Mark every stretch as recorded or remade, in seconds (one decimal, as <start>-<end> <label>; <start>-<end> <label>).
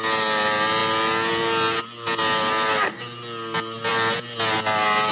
0.0-5.1 recorded